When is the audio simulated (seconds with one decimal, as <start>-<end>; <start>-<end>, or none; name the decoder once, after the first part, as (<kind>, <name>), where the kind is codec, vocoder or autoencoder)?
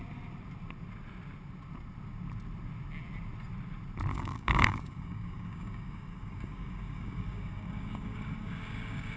4.1-9.2 (codec, DAC)